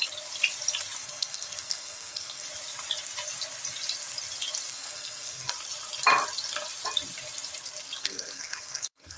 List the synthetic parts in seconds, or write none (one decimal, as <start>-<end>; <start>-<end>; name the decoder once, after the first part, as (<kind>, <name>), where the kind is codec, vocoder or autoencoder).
1.0-2.5 (codec, SNAC); 4.7-5.5; 8.0-9.2